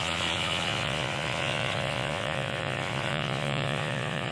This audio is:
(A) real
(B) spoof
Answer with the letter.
B